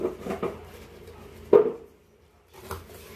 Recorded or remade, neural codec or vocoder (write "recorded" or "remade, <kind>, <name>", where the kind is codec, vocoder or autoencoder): recorded